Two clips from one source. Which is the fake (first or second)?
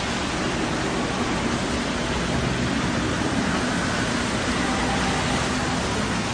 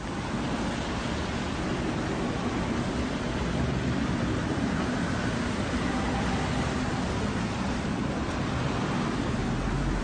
second